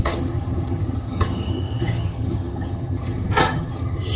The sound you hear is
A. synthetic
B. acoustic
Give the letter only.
A